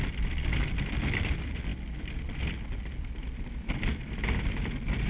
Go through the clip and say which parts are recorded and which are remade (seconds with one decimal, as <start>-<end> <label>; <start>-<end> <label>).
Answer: 0.0-5.1 recorded